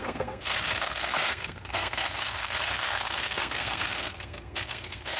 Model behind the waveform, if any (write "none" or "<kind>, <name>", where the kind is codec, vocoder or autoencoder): codec, SNAC